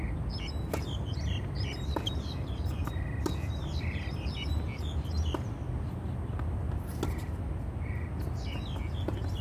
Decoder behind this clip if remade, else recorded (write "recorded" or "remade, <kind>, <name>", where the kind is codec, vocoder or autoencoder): recorded